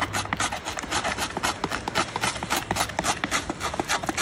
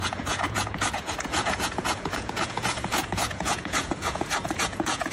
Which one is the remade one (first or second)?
second